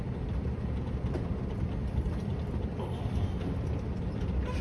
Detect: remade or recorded remade